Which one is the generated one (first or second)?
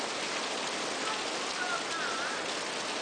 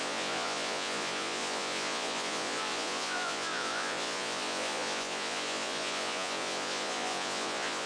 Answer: second